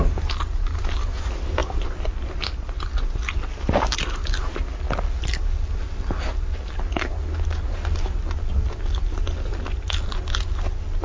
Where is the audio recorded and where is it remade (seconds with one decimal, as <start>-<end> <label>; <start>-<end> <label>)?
0.0-11.0 recorded